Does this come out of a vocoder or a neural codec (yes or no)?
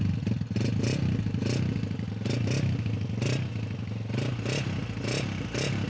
no